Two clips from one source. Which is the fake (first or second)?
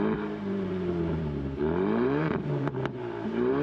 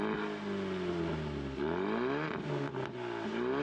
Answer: first